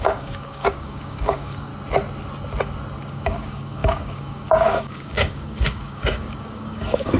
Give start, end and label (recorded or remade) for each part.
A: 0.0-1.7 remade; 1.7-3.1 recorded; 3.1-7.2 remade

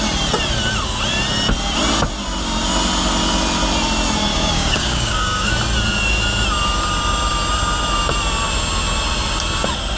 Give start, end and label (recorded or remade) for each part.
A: 0.0-4.3 recorded; 4.3-5.5 remade; 5.5-10.0 recorded

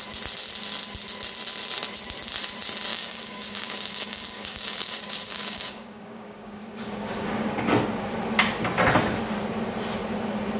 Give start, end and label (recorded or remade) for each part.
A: 0.0-2.9 recorded; 2.9-7.7 remade; 7.7-10.6 recorded

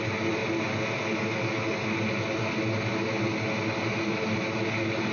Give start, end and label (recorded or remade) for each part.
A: 0.0-5.1 recorded